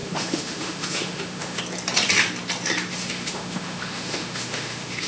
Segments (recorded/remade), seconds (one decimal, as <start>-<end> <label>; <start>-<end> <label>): 0.0-1.6 remade; 1.6-2.9 recorded; 2.9-5.1 remade